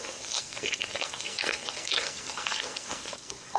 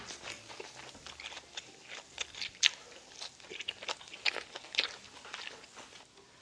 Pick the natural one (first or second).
second